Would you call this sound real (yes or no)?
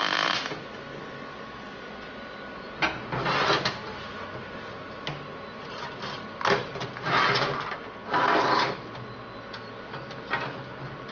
yes